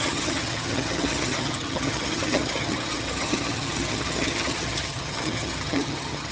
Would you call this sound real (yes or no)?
no